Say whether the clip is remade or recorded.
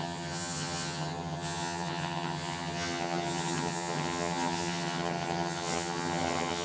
remade